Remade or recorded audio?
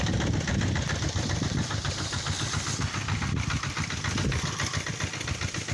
recorded